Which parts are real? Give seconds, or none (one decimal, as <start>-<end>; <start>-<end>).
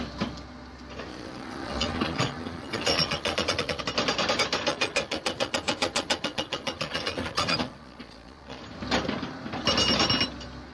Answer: 0.0-1.1; 3.8-4.7; 8.6-10.7